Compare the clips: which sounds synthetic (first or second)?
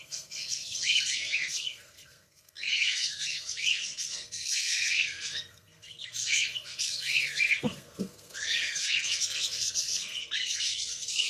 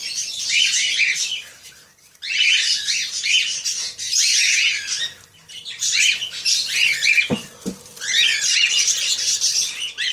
first